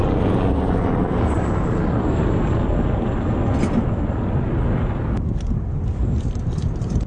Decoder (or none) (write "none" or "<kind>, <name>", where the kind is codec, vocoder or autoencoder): none